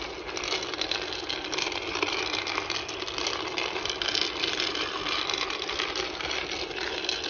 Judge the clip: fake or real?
real